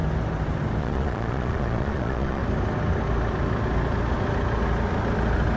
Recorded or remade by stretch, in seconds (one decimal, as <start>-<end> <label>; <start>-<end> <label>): 0.0-0.8 recorded; 0.8-2.4 remade; 2.4-5.6 recorded